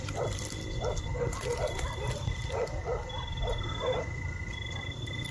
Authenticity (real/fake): real